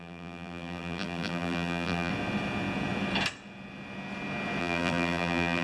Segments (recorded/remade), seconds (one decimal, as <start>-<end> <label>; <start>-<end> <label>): 0.0-2.1 remade; 2.1-4.6 recorded; 4.6-5.6 remade